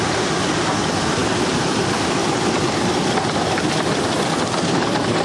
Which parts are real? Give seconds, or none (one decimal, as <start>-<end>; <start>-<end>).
0.0-1.2; 4.3-5.2